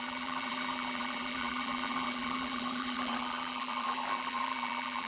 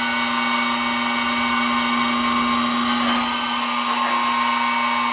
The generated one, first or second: first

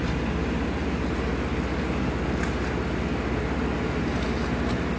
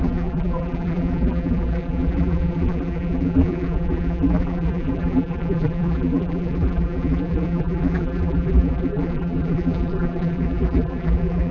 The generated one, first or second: second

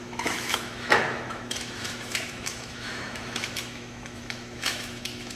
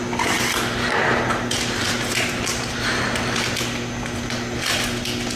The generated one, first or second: first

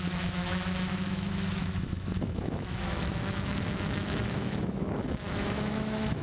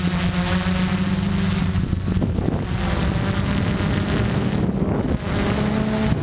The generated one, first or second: first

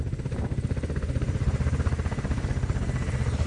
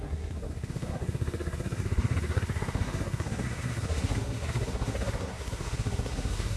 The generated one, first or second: second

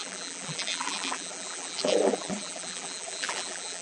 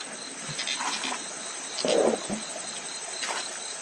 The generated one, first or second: first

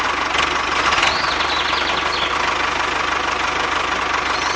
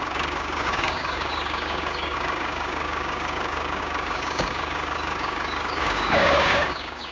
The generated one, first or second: second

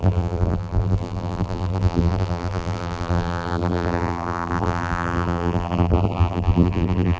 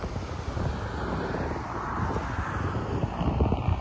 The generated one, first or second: first